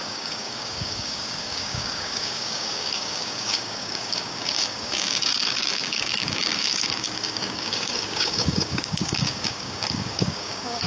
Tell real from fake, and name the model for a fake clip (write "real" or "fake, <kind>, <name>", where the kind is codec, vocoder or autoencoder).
fake, codec, DAC